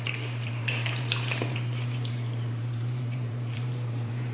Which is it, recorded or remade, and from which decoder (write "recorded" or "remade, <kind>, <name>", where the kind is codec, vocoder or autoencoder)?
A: remade, vocoder, BigVGAN v2